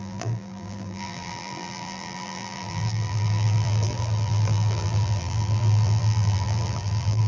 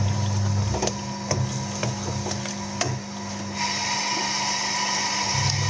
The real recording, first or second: second